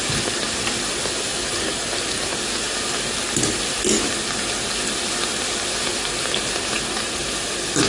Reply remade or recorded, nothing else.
recorded